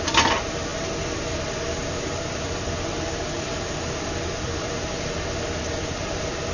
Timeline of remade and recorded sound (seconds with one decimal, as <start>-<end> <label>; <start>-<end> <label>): 0.0-6.5 recorded